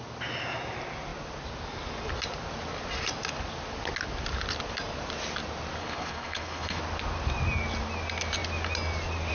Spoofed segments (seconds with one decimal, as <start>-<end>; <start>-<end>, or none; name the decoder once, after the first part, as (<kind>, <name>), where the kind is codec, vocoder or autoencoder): 5.8-6.8 (codec, HILCodec)